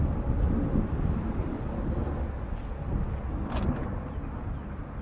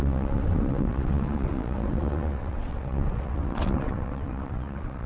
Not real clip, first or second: second